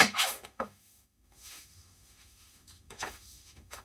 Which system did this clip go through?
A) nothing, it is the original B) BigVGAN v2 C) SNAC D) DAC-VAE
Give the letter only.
D